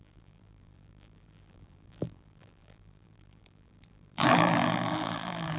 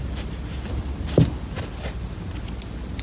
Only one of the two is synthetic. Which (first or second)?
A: first